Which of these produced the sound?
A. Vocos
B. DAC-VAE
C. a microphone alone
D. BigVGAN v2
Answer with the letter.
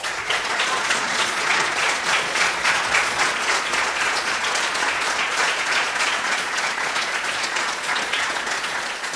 A